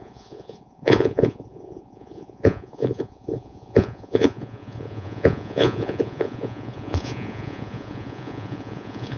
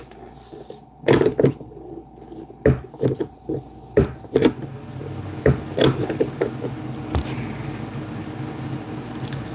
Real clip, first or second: second